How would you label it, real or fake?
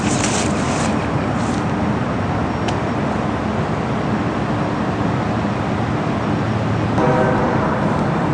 real